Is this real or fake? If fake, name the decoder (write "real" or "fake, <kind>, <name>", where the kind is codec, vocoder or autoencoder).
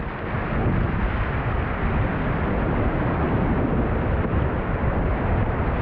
real